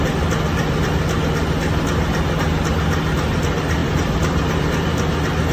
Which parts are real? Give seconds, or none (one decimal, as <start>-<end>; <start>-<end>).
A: 0.0-3.8; 4.7-5.5